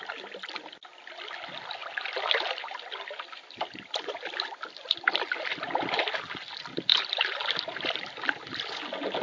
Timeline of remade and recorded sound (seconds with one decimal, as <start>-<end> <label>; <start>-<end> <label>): 0.0-1.8 recorded; 1.8-4.3 remade; 4.3-6.9 recorded; 6.9-8.5 remade; 8.5-9.2 recorded